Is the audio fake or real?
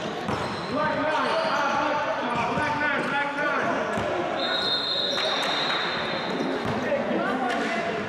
real